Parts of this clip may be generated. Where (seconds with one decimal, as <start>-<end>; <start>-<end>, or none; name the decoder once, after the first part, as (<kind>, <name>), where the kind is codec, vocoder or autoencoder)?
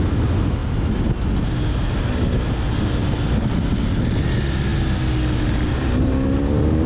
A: none